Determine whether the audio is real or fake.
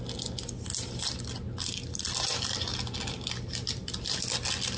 real